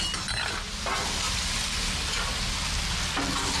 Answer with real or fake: real